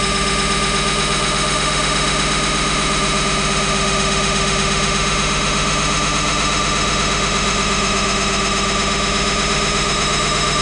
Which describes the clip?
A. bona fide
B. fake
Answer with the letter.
B